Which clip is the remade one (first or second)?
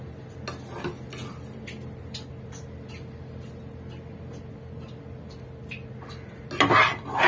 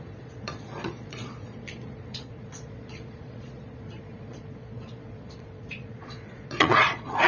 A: second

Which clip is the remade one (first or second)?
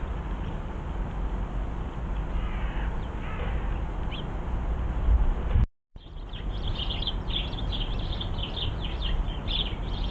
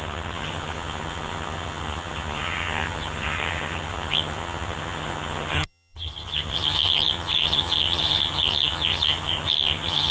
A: second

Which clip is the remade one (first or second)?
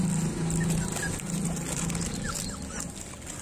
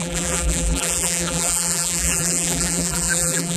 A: second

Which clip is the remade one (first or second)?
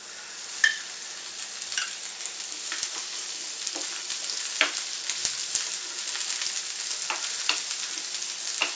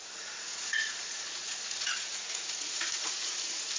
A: second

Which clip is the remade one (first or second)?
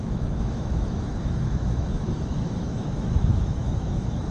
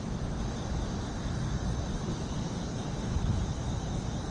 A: first